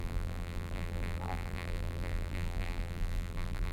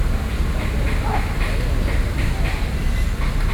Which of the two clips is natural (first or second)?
second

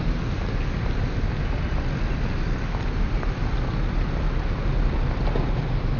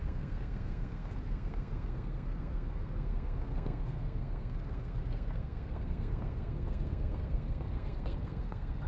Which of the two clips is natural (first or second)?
first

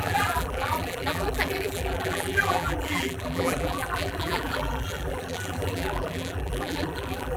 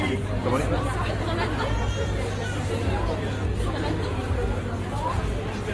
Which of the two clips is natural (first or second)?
second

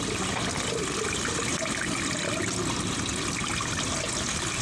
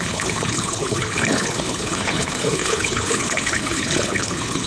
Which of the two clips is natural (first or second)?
first